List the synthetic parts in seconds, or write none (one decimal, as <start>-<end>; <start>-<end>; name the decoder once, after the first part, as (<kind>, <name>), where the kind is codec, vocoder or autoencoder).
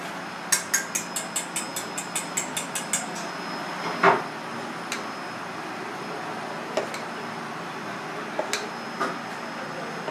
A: none